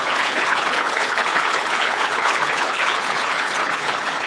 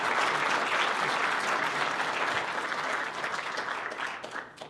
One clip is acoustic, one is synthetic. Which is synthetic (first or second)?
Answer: first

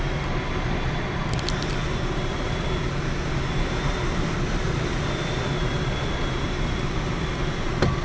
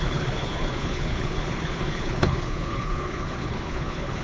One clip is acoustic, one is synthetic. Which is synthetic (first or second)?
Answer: second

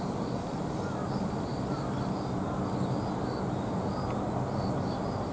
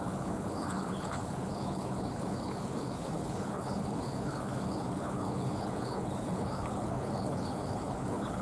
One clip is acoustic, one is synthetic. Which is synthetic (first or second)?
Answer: second